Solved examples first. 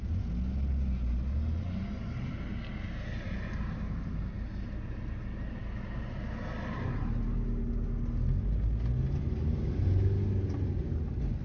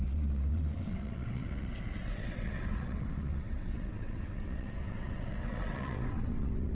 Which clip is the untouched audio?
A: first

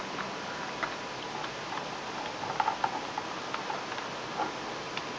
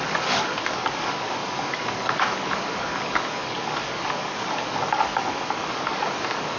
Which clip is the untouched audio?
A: first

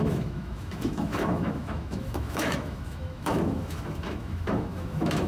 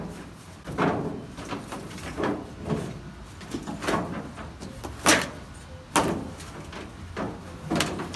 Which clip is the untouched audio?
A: second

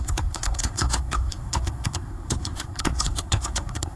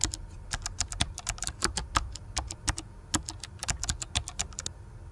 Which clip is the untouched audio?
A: second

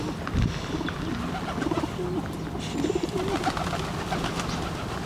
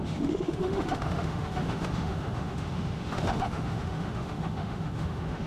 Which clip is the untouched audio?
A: first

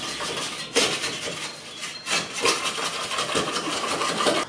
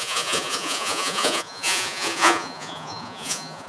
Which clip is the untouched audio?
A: first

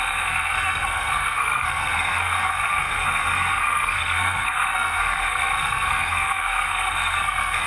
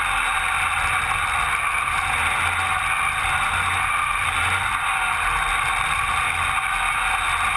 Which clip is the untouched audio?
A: second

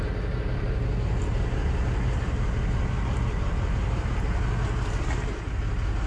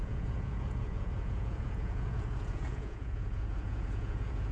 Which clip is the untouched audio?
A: first